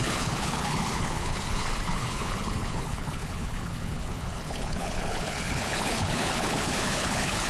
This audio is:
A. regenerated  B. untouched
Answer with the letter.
A